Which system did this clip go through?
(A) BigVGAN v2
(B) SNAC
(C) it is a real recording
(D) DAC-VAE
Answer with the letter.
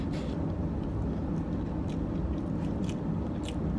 C